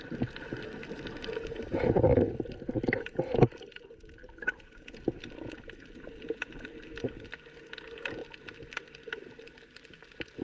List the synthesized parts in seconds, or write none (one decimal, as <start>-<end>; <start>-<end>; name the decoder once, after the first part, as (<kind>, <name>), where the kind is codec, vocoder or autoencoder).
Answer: none